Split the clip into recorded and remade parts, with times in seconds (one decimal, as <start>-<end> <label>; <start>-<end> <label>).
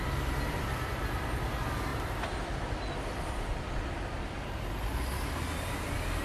0.0-6.2 recorded